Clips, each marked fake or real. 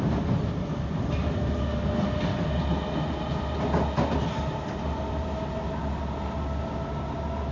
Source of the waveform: real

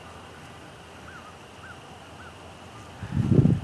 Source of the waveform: fake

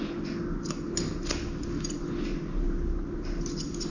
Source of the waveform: real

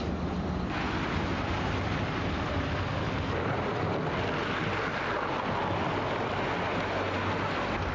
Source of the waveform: real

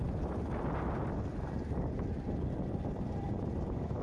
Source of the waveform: real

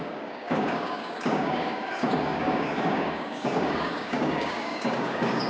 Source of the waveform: fake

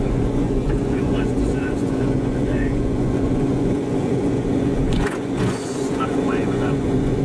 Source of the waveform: fake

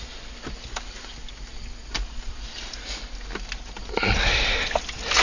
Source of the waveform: real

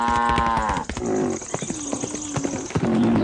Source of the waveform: real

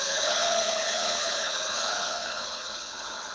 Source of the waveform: fake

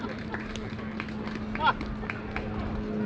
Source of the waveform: real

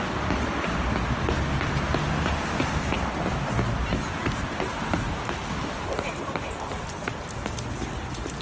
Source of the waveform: real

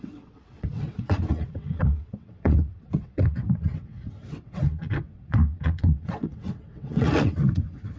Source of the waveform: fake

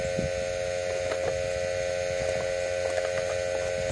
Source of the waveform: real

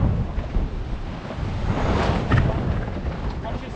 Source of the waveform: real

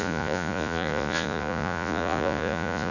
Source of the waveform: fake